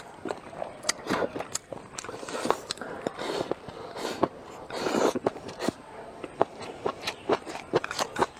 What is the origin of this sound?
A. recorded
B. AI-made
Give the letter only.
B